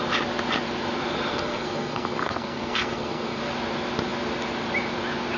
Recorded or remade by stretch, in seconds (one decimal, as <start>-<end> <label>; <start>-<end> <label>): 0.0-1.3 recorded; 1.3-3.4 remade; 3.4-5.4 recorded

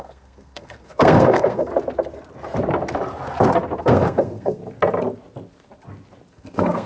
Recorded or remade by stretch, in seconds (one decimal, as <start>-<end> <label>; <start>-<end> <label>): 0.0-1.7 remade; 1.7-3.8 recorded; 3.8-4.6 remade; 4.6-6.3 recorded; 6.3-6.9 remade

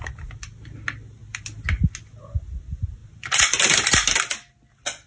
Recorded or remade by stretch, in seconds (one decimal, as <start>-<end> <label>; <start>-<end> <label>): 0.0-5.1 recorded

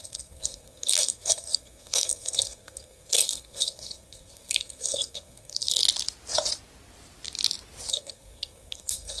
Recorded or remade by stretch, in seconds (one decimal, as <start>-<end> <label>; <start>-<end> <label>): 0.0-5.8 remade; 5.8-7.9 recorded; 7.9-9.2 remade

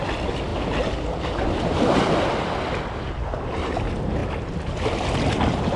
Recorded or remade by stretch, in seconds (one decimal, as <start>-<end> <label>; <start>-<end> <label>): 0.0-5.8 recorded